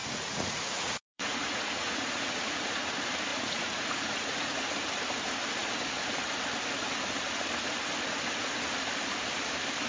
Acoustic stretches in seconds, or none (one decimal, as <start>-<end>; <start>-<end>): 2.8-3.3; 4.6-9.9